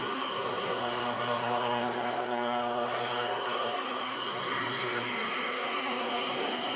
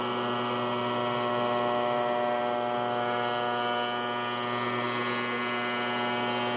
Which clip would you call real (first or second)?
second